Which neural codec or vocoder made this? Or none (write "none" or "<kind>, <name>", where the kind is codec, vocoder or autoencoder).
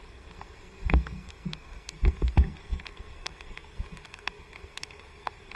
codec, SNAC